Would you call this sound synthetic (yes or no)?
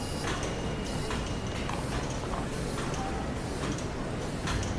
no